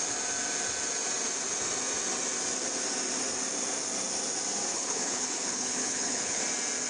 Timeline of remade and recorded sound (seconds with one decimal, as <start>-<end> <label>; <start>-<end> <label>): 0.0-4.7 recorded; 4.7-6.4 remade; 6.4-6.9 recorded